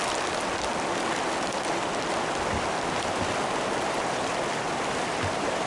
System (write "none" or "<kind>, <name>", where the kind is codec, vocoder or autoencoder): none